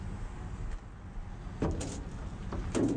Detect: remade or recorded recorded